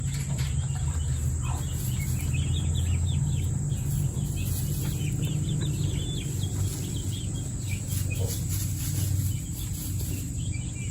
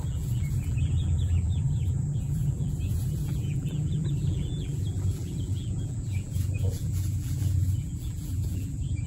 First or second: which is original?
first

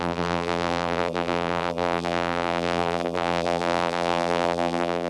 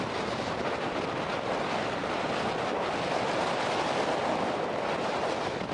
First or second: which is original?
second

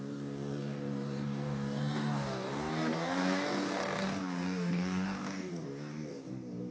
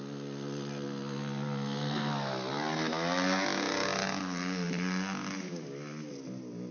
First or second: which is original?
second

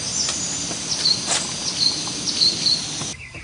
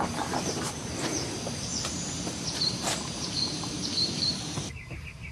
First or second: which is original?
first